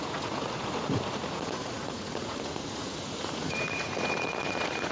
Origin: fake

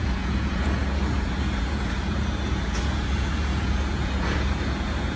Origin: fake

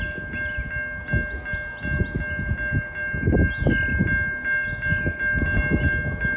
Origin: real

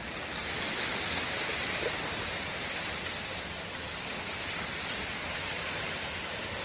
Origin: real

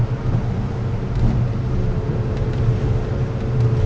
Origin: real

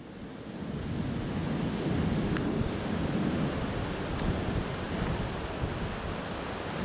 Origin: real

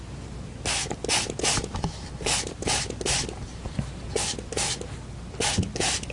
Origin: real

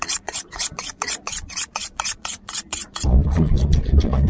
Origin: fake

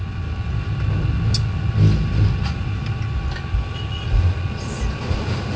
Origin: real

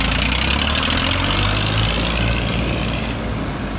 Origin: real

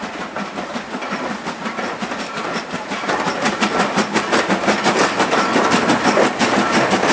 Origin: real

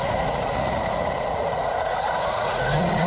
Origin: fake